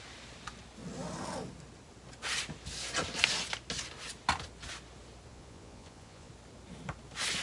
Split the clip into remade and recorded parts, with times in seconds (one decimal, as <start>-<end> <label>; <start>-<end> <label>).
0.0-5.3 recorded; 5.3-6.3 remade; 6.3-7.4 recorded